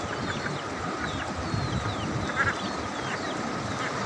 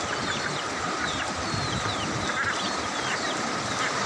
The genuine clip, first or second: first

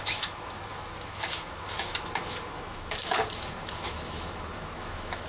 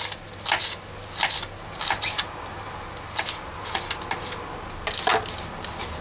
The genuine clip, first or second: second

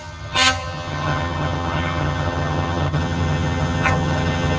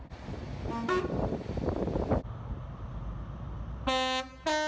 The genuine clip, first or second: second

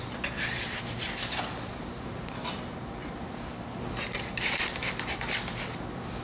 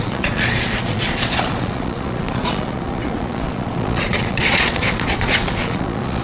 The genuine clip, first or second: first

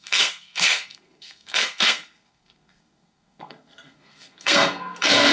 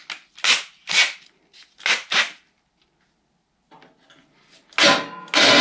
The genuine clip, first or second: second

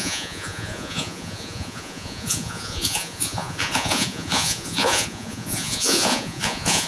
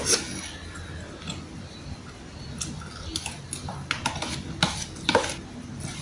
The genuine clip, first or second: second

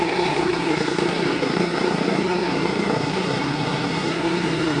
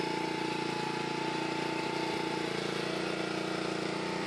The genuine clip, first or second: second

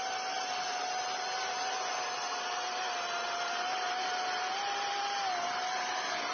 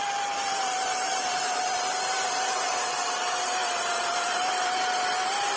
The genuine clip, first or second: first